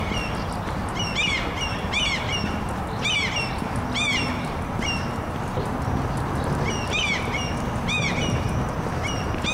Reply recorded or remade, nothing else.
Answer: recorded